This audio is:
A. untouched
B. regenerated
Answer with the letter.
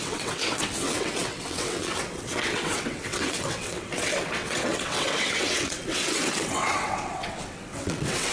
B